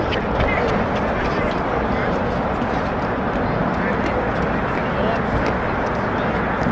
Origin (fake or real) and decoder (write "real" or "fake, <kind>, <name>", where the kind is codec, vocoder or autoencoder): real